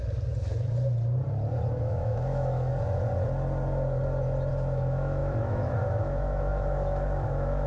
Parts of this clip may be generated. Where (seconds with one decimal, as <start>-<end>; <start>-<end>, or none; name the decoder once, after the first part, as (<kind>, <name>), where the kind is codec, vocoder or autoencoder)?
1.8-2.7 (autoencoder, DAC-VAE); 4.5-7.7